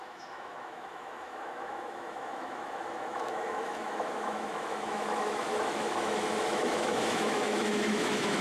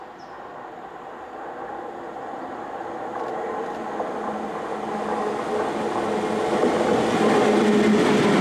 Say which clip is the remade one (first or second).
first